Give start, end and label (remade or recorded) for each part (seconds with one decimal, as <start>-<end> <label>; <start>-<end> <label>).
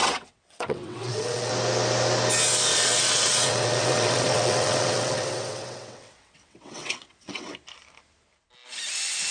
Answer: 0.0-1.5 remade; 1.5-2.7 recorded; 2.7-7.5 remade; 7.5-9.3 recorded